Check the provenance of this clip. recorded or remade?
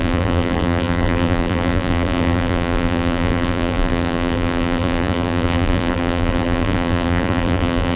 remade